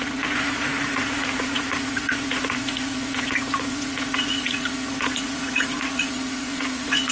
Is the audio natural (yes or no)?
no